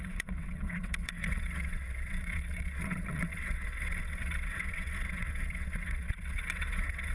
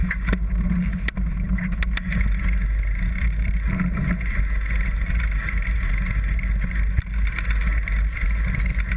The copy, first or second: first